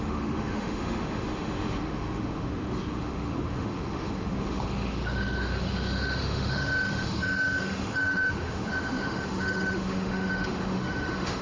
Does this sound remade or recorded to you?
remade